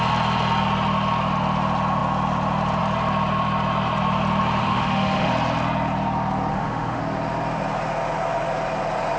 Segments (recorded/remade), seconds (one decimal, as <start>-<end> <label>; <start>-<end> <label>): 0.0-4.6 recorded; 4.6-5.3 remade; 5.3-6.5 recorded; 6.5-7.0 remade; 7.0-9.2 recorded